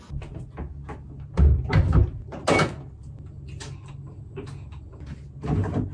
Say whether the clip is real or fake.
real